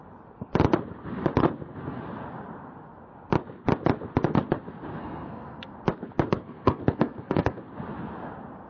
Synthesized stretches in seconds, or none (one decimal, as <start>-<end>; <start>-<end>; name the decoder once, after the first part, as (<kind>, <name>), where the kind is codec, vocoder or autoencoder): 5.0-5.7 (codec, SNAC); 6.4-7.6